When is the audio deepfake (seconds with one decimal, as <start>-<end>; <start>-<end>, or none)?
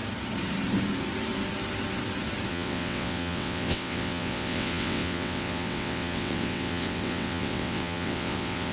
2.5-8.7